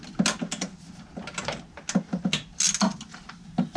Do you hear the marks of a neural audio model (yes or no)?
no